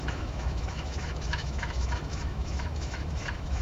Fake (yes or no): yes